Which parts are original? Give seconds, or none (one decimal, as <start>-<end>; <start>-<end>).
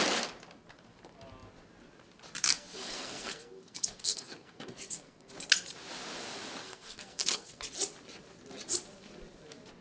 0.0-2.4; 5.3-6.6; 7.6-9.8